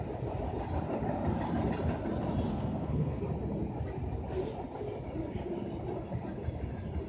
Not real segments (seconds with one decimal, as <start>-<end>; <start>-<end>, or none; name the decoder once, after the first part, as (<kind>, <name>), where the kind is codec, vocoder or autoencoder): 2.5-3.2 (codec, SNAC)